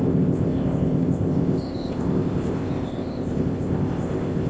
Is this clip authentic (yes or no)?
no